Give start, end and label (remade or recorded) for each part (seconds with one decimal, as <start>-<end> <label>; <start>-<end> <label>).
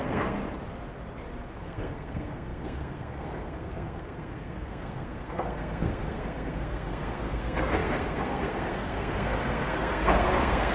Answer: 0.0-0.4 remade; 0.4-1.6 recorded; 1.6-10.7 remade